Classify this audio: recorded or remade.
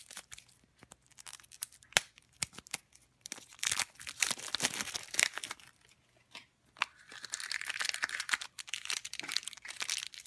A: recorded